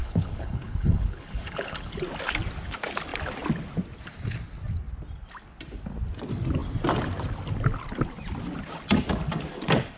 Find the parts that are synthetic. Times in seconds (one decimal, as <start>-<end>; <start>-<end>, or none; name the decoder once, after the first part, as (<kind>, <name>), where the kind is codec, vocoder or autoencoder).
0.0-1.9 (codec, HILCodec)